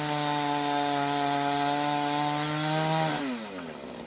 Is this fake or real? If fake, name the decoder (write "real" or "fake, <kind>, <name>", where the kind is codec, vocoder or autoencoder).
real